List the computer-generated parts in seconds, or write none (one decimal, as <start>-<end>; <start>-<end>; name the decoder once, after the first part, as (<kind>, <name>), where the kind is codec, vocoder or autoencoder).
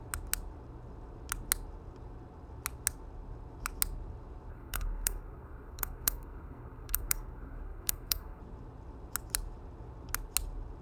4.5-8.4 (codec, SNAC)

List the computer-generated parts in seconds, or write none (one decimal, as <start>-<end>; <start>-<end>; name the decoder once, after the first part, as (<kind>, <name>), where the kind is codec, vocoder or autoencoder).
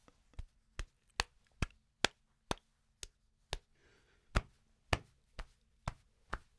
none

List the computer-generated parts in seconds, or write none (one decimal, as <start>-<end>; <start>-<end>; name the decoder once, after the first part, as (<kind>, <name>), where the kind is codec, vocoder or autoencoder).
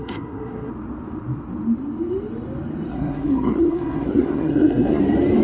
0.0-0.7 (codec, SNAC); 2.9-5.0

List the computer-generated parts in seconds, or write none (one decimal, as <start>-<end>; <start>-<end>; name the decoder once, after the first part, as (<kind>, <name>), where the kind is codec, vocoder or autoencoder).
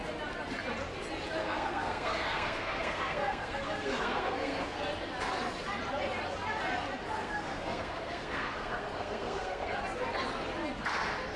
1.4-4.8 (codec, SNAC); 7.2-9.8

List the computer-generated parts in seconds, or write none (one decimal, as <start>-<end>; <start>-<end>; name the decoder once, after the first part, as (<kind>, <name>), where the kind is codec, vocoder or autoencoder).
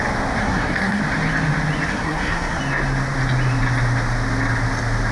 0.4-1.0 (codec, SNAC); 1.9-2.6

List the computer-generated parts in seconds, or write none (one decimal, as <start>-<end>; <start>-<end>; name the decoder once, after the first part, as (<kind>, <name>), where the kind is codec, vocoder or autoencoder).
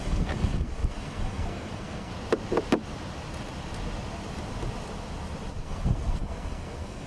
0.0-2.1 (codec, SNAC); 5.6-7.1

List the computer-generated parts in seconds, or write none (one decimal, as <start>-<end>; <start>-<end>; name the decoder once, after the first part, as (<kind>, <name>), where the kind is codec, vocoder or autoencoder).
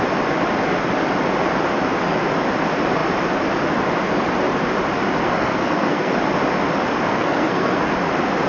5.2-6.2 (codec, SNAC); 7.1-7.9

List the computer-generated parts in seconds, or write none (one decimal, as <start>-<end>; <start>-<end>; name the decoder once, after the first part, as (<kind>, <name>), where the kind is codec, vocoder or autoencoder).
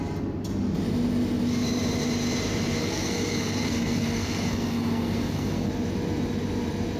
2.8-5.7 (codec, SNAC)